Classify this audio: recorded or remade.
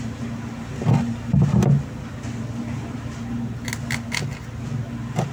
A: recorded